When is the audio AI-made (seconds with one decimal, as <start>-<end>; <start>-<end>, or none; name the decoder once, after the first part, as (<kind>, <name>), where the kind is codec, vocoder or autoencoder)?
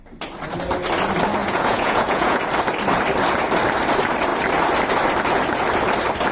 1.4-2.4 (vocoder, Vocos)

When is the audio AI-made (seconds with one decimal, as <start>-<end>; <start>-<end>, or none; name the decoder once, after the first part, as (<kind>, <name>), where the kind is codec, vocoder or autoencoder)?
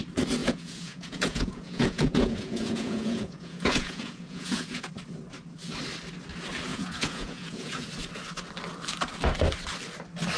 0.4-4.9 (vocoder, Vocos); 6.7-7.9